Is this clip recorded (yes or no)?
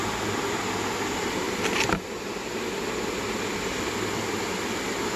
yes